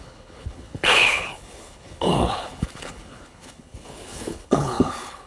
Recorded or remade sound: remade